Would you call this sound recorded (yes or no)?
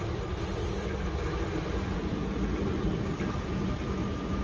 yes